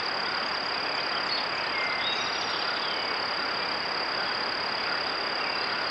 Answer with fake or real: real